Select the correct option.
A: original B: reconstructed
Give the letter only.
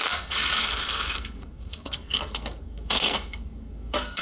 B